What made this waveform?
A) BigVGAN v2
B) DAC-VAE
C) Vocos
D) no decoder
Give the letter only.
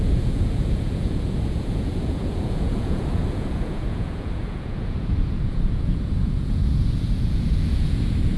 C